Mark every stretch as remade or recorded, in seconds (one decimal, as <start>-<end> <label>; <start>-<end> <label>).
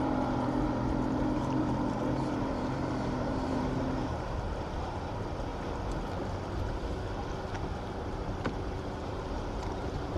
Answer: 0.0-5.5 remade; 5.5-7.9 recorded; 7.9-10.2 remade